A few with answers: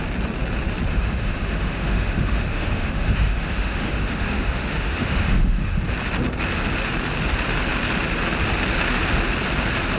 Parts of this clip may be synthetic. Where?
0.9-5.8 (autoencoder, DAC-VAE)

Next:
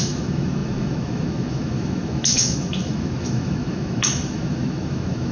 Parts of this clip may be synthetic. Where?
0.0-5.3 (autoencoder, DAC-VAE)

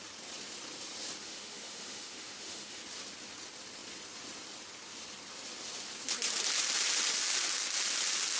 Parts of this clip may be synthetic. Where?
1.2-2.8 (autoencoder, DAC-VAE)

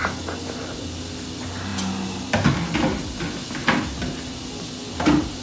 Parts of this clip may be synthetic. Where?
none